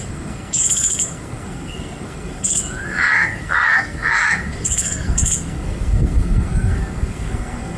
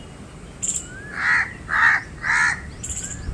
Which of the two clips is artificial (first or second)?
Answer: first